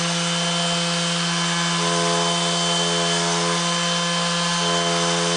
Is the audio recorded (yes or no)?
yes